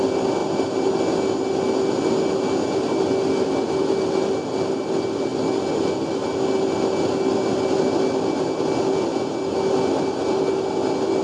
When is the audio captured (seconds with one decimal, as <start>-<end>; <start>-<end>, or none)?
0.0-11.2